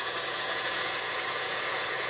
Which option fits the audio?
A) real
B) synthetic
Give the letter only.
B